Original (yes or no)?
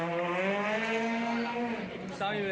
yes